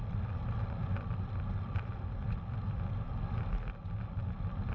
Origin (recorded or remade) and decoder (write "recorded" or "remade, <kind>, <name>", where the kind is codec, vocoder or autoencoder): recorded